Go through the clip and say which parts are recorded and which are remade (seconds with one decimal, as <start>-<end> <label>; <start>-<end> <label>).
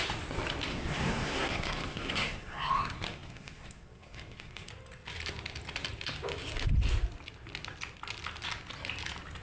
0.0-0.7 recorded; 0.7-4.7 remade; 4.7-9.4 recorded